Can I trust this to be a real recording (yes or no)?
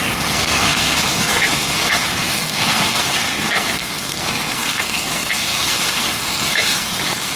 no